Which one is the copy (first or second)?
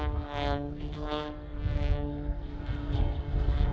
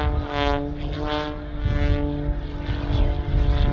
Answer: first